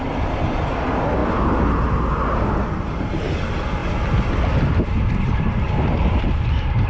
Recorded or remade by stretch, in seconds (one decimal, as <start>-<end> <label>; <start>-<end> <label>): 0.0-6.9 recorded